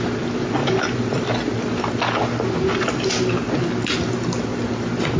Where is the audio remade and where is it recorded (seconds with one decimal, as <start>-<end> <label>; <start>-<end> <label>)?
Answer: 0.0-5.2 recorded